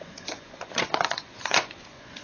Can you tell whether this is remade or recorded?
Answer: remade